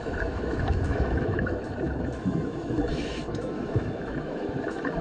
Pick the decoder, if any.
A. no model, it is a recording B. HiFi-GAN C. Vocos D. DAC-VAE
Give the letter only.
D